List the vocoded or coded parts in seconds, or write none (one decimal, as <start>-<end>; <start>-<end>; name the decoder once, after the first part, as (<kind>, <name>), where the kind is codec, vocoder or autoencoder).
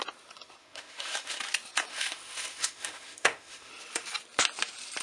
0.6-1.4 (autoencoder, DAC-VAE); 1.9-3.7